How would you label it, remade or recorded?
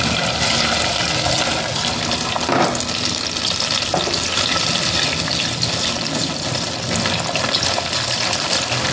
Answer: recorded